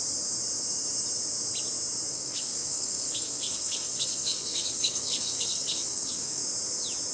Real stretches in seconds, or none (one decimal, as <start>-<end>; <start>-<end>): 0.0-2.1; 6.4-7.1